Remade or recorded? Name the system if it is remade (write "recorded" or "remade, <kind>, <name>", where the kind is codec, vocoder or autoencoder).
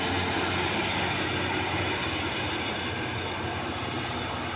recorded